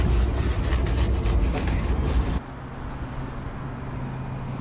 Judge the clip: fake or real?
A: real